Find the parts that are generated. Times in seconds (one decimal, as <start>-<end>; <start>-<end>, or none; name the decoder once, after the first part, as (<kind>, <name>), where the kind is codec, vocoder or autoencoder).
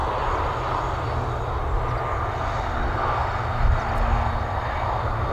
none